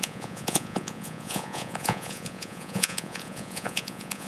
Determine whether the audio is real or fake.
fake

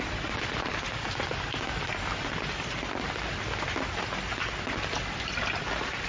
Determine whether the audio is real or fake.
real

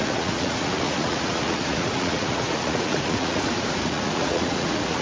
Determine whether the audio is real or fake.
fake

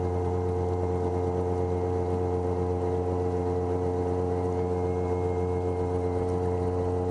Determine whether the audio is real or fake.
real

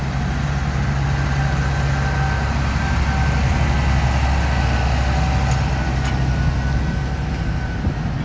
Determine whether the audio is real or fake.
real